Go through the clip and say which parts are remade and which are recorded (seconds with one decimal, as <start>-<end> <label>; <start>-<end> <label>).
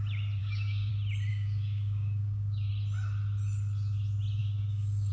0.0-0.4 recorded; 0.4-0.9 remade; 0.9-1.3 recorded; 1.3-2.7 remade; 2.7-4.4 recorded; 4.4-5.1 remade